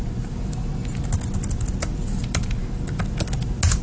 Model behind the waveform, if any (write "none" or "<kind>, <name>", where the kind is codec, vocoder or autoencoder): none